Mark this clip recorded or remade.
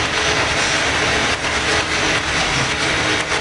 recorded